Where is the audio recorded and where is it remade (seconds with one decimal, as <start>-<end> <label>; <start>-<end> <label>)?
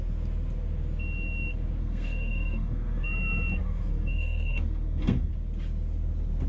0.0-1.8 recorded; 1.8-3.0 remade; 3.0-3.6 recorded; 3.6-5.3 remade; 5.3-6.5 recorded